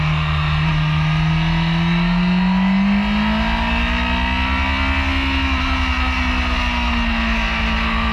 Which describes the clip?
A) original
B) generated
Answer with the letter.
A